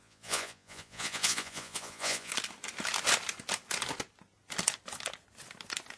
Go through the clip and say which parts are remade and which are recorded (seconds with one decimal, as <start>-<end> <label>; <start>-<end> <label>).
0.0-2.3 remade; 2.3-6.0 recorded